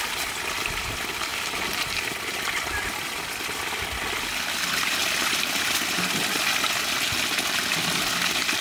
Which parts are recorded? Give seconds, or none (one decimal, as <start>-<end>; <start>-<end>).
0.0-1.3; 2.3-5.0; 5.8-8.6